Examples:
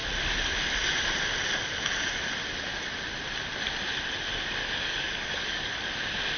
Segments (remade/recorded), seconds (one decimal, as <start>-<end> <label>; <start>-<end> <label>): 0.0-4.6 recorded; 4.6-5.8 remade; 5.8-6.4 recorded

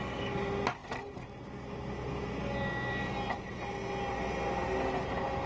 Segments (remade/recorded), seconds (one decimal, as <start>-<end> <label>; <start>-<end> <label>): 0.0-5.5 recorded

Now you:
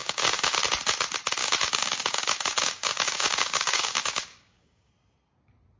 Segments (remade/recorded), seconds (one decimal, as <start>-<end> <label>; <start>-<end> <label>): 0.0-0.6 remade; 0.6-1.4 recorded; 1.4-4.9 remade; 4.9-5.8 recorded

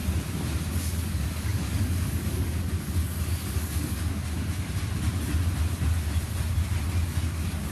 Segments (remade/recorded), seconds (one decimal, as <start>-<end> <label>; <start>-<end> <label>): 0.0-0.7 recorded; 0.7-4.2 remade; 4.2-7.0 recorded; 7.0-7.7 remade

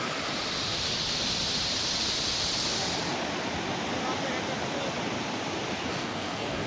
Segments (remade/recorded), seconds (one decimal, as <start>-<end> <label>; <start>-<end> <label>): 0.0-5.9 recorded; 5.9-6.7 remade

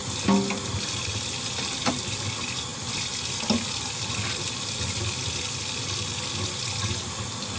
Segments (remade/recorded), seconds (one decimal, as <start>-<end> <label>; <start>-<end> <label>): 0.0-7.6 recorded

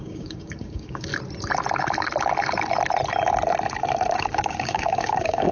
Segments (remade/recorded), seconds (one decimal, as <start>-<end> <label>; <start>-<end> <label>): 0.0-1.1 remade; 1.1-4.1 recorded; 4.1-5.5 remade